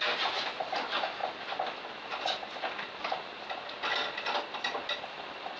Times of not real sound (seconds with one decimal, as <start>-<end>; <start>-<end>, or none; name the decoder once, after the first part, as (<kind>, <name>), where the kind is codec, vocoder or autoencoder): none